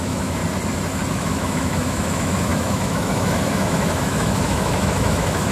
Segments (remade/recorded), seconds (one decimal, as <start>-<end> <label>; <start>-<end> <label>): 0.0-0.4 remade; 0.4-1.1 recorded; 1.1-5.5 remade

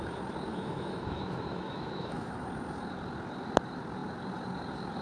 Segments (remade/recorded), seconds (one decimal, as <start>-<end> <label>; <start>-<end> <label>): 0.0-0.5 recorded; 0.5-2.4 remade; 2.4-5.0 recorded

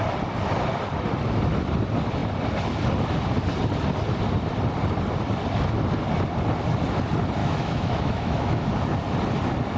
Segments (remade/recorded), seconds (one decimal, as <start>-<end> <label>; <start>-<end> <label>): 0.0-7.4 recorded; 7.4-8.6 remade; 8.6-9.8 recorded

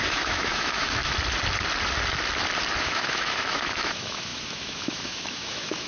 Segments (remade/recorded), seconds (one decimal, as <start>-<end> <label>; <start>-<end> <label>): 0.0-1.0 remade; 1.0-2.8 recorded; 2.8-5.9 remade

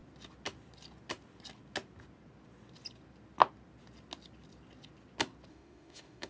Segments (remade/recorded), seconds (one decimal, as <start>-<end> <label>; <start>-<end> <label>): 0.0-5.5 recorded; 5.5-6.3 remade

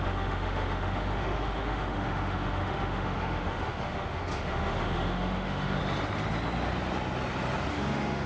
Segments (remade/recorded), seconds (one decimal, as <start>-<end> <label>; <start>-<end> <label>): 0.0-5.8 remade; 5.8-7.7 recorded; 7.7-8.3 remade

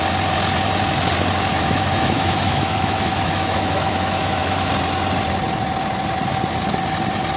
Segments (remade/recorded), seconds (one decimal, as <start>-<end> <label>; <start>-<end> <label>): 0.0-1.5 recorded; 1.5-4.7 remade; 4.7-7.4 recorded

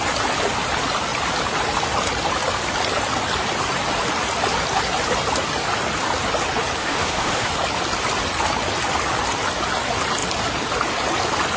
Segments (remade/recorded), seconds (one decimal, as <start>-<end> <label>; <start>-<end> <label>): 0.0-6.8 recorded; 6.8-7.5 remade; 7.5-11.6 recorded